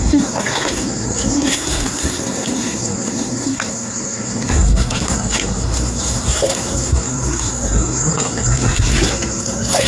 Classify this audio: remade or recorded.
remade